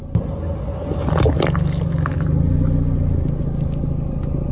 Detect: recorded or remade recorded